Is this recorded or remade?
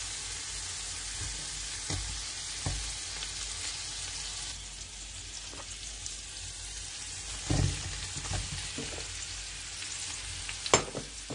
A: recorded